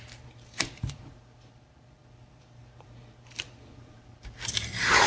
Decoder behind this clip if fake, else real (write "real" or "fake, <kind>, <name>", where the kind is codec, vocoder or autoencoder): fake, vocoder, BigVGAN v2